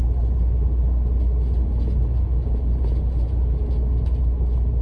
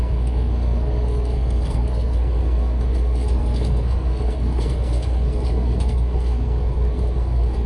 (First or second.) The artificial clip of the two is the second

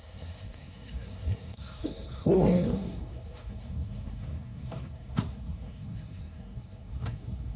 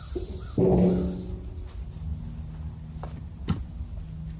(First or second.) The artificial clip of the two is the first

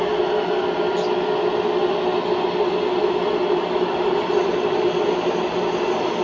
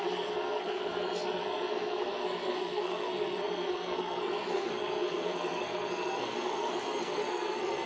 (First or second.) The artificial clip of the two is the second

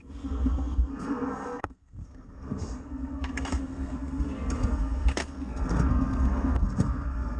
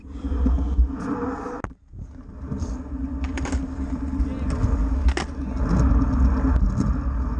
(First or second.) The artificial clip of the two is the first